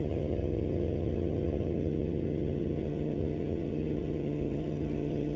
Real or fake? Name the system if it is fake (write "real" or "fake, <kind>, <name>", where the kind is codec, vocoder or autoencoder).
fake, vocoder, HiFi-GAN